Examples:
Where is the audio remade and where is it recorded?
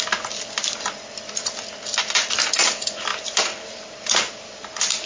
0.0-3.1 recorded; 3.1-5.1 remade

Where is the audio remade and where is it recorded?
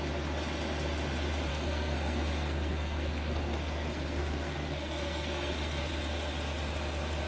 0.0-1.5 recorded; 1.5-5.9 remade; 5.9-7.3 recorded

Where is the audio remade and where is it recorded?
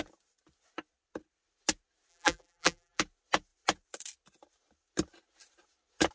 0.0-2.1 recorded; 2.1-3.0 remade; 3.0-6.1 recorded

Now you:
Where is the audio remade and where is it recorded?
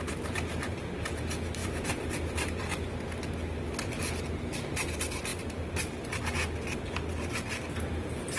0.0-1.6 recorded; 1.6-2.4 remade; 2.4-5.3 recorded; 5.3-6.2 remade; 6.2-8.4 recorded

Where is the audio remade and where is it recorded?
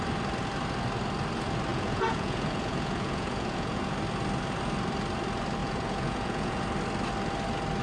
0.0-1.7 recorded; 1.7-3.8 remade; 3.8-5.6 recorded; 5.6-6.6 remade; 6.6-7.8 recorded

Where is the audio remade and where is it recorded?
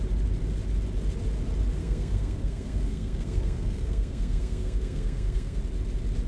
0.0-1.8 recorded; 1.8-5.6 remade; 5.6-6.3 recorded